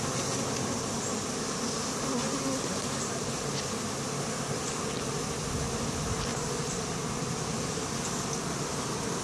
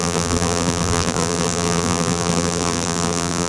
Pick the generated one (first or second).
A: second